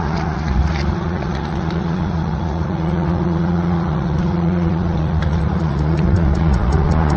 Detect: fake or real fake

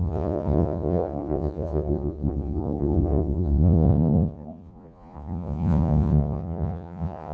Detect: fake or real fake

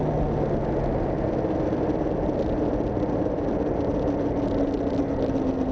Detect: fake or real real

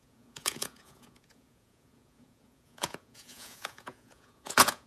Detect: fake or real fake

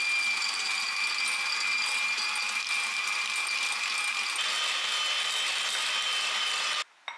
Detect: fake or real real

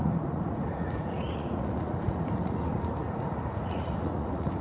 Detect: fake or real fake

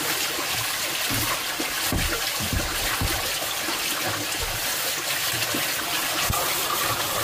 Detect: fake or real real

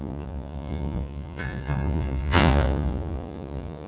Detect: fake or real fake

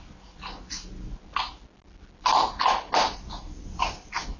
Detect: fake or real real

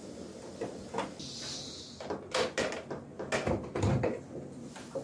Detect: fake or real real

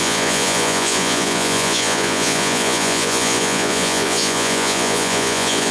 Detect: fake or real fake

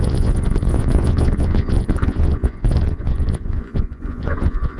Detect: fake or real fake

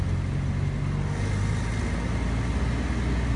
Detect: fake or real real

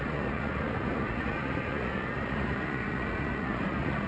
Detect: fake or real fake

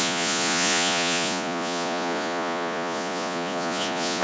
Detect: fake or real fake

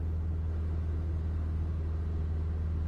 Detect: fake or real real